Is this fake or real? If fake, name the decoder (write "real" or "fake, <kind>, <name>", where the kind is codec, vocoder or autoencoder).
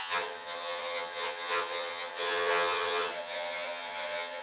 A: fake, vocoder, HiFi-GAN